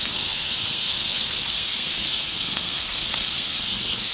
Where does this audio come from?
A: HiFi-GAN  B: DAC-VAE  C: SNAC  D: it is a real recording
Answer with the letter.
C